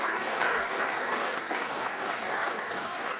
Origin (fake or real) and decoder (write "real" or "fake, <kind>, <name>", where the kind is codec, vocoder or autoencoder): fake, codec, DAC